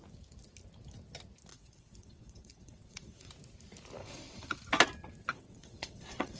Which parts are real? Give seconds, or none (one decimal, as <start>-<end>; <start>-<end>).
0.0-1.5; 3.3-4.0; 4.6-5.3